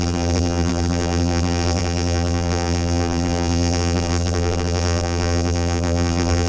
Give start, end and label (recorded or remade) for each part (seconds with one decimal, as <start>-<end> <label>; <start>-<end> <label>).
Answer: 0.0-6.5 remade

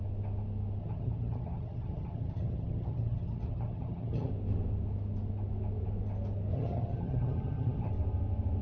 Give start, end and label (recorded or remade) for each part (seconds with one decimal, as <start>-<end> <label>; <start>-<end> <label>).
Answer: 0.0-0.8 recorded; 0.8-4.3 remade; 4.3-6.5 recorded; 6.5-7.9 remade; 7.9-8.6 recorded

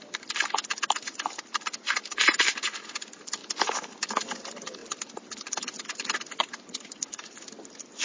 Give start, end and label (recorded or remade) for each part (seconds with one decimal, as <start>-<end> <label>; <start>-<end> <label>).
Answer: 0.0-8.0 recorded

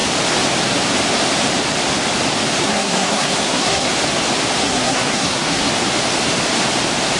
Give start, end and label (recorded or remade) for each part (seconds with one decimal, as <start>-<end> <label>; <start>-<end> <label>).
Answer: 0.0-2.6 recorded; 2.6-3.9 remade; 3.9-4.6 recorded; 4.6-5.7 remade; 5.7-7.2 recorded

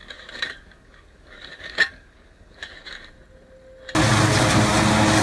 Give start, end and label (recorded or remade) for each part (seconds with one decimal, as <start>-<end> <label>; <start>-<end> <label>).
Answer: 0.0-3.1 remade; 3.1-5.2 recorded